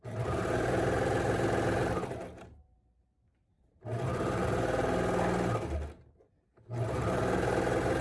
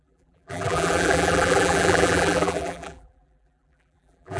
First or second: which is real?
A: first